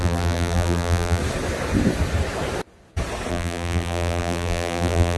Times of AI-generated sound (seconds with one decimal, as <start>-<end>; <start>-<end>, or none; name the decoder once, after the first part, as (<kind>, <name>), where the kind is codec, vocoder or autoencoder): 0.0-1.2 (vocoder, BigVGAN v2); 3.3-5.2